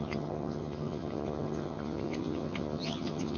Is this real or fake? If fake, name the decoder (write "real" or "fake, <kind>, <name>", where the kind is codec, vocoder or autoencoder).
fake, vocoder, HiFi-GAN